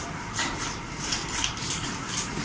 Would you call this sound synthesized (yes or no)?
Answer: yes